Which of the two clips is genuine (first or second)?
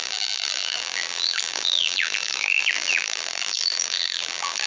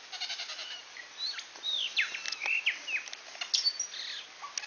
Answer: second